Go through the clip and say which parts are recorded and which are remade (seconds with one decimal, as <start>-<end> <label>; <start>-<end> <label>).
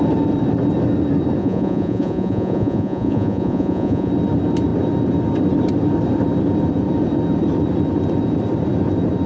0.0-1.4 recorded; 1.4-4.1 remade; 4.1-9.3 recorded